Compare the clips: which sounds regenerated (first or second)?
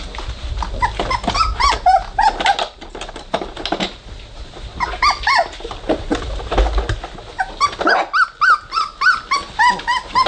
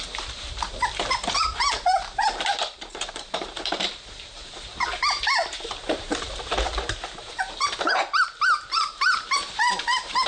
second